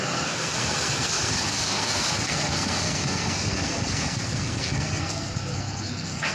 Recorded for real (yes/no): no